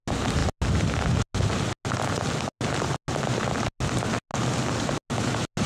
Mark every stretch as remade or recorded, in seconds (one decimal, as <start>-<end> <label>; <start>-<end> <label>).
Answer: 0.0-5.7 recorded